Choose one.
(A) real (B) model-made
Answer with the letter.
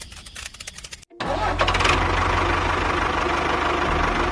A